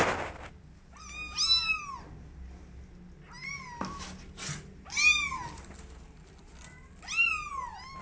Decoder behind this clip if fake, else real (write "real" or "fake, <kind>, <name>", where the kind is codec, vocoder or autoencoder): real